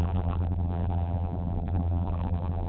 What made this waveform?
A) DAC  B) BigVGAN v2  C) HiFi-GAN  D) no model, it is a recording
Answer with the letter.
B